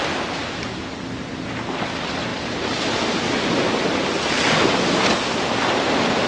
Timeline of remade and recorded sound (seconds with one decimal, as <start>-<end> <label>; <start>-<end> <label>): 0.0-6.3 recorded